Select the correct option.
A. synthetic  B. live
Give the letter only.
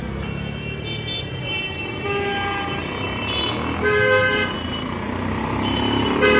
B